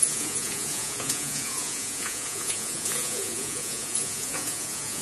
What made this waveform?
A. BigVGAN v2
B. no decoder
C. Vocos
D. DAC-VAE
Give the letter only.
C